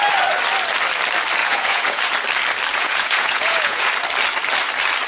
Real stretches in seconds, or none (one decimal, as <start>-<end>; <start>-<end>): 0.0-1.4; 2.0-2.7; 3.9-5.1